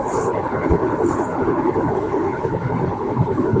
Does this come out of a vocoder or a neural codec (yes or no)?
yes